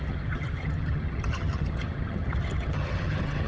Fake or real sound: fake